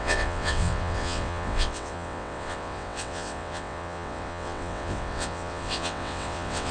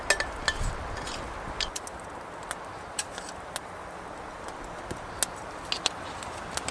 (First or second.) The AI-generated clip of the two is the first